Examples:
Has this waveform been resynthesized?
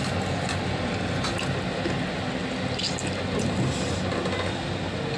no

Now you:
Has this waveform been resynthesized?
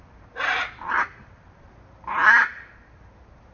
no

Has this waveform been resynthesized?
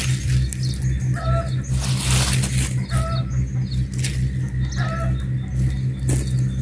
no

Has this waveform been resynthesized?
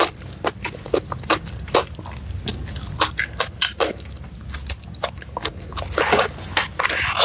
no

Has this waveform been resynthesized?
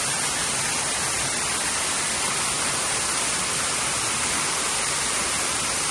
no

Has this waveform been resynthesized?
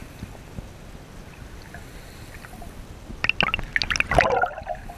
no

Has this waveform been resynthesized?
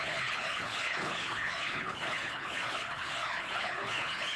yes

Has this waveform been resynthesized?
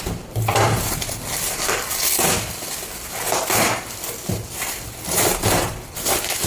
yes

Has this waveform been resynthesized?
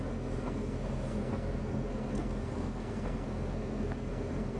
yes